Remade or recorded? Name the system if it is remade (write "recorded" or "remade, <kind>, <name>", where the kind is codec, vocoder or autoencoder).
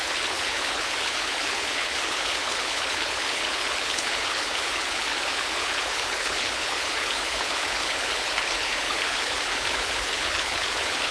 remade, codec, HILCodec